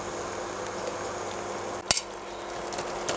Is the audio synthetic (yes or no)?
no